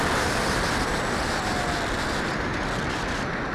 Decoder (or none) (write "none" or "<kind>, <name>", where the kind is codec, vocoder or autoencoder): none